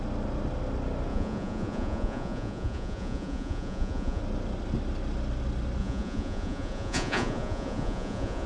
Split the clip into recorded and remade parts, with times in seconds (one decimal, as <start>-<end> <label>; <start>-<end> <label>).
0.0-1.1 recorded; 1.1-4.2 remade; 4.2-5.8 recorded; 5.8-8.5 remade